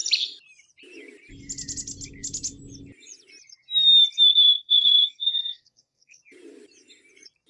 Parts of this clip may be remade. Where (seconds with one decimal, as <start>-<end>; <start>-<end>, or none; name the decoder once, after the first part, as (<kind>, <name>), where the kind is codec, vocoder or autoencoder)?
4.3-6.2 (codec, SNAC)